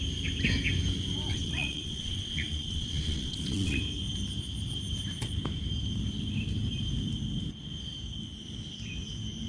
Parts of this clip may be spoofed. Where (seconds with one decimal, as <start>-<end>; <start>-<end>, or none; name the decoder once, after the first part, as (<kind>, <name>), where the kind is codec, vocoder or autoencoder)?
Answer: 1.3-3.8 (vocoder, WaveNeXt)